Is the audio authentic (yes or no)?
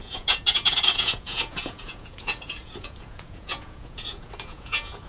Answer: no